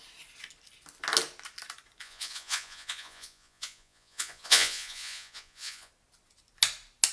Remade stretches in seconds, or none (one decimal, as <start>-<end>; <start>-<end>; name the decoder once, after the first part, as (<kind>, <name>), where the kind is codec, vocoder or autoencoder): 2.0-5.9 (vocoder, Vocos)